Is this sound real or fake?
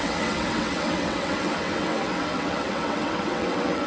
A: fake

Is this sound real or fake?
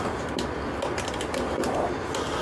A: real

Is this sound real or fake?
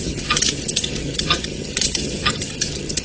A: fake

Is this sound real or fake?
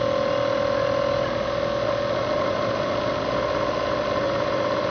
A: real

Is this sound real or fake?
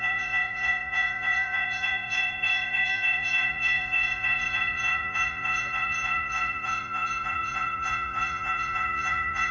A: fake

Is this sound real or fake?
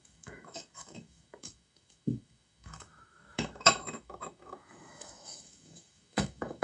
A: fake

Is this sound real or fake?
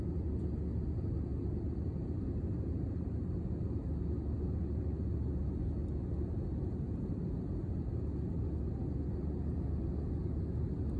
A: real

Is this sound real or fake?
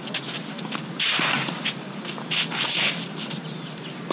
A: real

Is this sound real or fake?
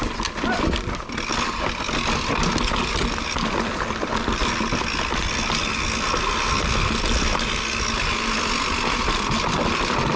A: real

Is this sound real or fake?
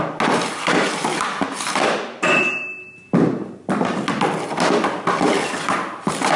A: real